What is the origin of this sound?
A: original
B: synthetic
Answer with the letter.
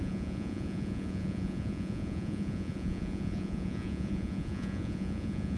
B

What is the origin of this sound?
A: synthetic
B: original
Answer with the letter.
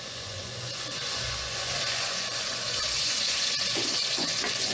A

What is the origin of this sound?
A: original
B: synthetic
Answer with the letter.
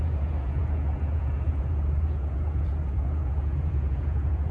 B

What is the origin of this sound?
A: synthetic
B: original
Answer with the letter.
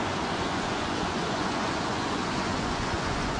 A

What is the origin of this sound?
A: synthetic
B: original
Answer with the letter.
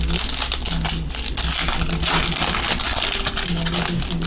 B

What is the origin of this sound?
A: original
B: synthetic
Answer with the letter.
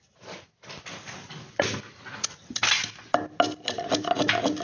A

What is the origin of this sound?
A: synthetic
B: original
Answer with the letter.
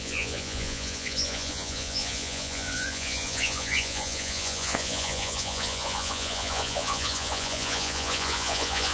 A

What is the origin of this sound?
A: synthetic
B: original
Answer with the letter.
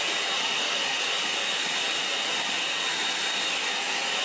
B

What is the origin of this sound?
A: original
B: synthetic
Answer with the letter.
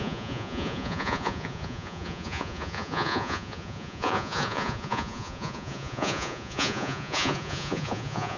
B